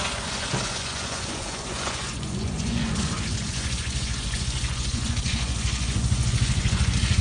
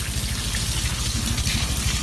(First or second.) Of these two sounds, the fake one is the first